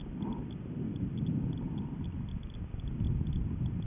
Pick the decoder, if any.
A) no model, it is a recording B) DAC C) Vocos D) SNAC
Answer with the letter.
A